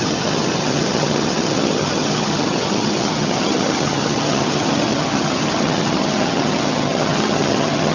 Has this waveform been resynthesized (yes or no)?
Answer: yes